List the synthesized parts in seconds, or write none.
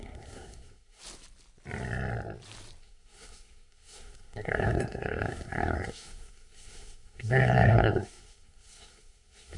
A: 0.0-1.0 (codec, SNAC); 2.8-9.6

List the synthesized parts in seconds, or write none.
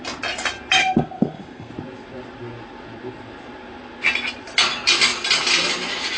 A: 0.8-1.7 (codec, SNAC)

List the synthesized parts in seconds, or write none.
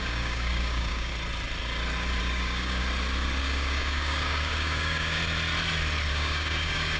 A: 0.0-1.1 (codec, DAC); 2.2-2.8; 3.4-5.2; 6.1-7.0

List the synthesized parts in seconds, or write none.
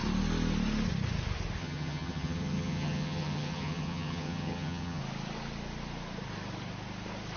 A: 1.6-5.0 (vocoder, HiFi-GAN)